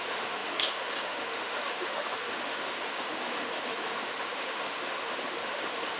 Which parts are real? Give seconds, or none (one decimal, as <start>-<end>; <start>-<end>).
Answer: none